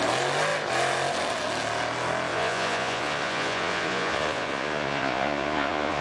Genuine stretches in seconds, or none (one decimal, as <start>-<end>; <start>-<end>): 0.0-2.3

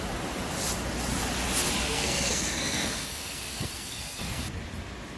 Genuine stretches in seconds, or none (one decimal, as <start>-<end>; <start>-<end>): 0.0-1.8; 4.4-5.2

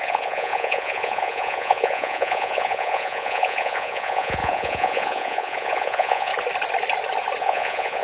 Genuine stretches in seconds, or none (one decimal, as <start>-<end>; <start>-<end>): 6.3-7.4

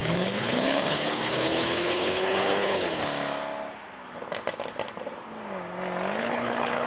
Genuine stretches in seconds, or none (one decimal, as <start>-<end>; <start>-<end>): 3.0-6.2

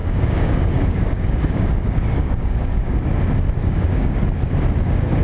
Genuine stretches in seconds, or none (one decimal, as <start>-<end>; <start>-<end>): 3.1-3.6; 4.2-5.2

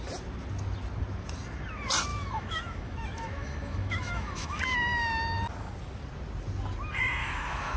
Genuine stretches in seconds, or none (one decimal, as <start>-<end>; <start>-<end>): 0.0-2.1; 4.6-7.2

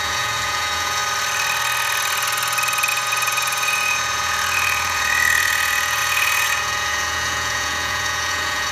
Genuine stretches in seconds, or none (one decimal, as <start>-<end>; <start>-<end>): 1.0-2.9